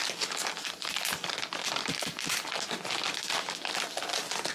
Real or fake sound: real